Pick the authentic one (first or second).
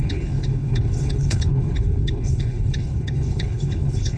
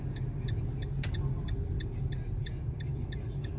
second